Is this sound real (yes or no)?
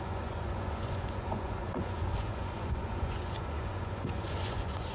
no